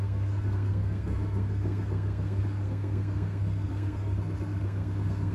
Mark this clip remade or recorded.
remade